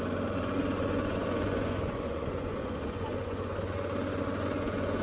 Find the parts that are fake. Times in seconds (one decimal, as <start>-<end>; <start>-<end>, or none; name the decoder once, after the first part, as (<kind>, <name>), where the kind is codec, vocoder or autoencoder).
0.0-5.0 (vocoder, Vocos)